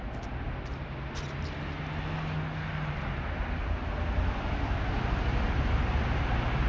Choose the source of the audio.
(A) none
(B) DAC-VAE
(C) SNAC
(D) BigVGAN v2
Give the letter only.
A